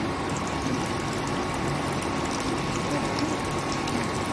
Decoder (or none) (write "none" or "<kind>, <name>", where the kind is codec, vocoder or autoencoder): vocoder, BigVGAN v2